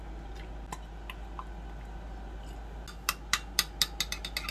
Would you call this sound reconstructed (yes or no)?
no